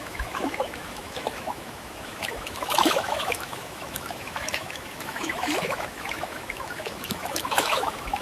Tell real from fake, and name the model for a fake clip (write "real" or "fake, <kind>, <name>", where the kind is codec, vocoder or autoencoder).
fake, autoencoder, DAC-VAE